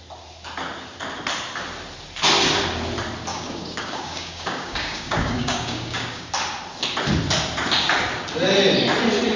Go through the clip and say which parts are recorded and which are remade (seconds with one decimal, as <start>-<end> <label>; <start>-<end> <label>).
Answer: 0.0-3.3 recorded; 3.3-6.3 remade; 6.3-9.4 recorded